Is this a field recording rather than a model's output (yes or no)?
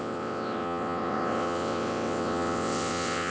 no